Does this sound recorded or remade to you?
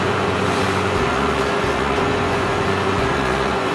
remade